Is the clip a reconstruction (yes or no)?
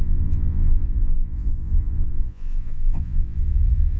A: yes